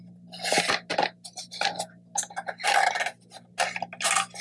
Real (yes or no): yes